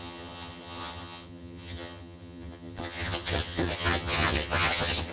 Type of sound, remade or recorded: remade